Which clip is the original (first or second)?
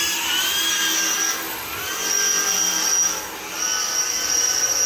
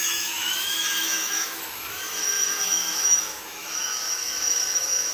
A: first